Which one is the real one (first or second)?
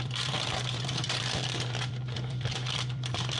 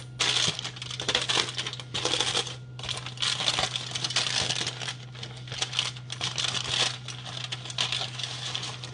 second